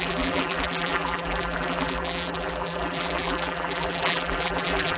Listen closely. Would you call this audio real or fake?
fake